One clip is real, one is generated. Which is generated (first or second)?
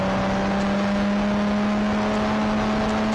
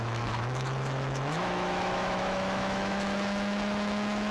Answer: second